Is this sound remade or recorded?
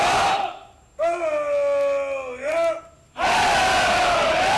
recorded